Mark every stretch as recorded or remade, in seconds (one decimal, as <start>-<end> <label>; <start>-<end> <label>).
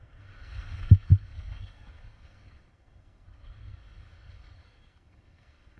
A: 0.0-5.8 remade